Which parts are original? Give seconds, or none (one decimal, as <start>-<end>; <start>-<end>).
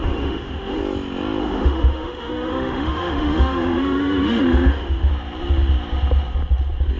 0.8-1.4; 5.1-7.0